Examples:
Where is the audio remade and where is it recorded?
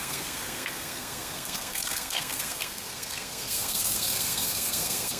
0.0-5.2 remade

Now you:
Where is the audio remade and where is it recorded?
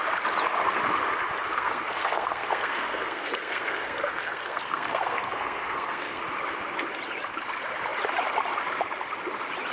0.0-1.5 recorded; 1.5-6.2 remade; 6.2-9.7 recorded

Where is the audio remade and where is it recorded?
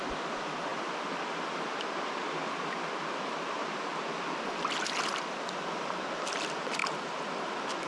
0.0-7.9 recorded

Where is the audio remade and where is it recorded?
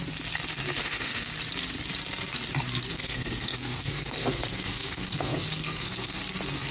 0.0-0.8 recorded; 0.8-1.3 remade; 1.3-2.9 recorded; 2.9-6.2 remade; 6.2-6.7 recorded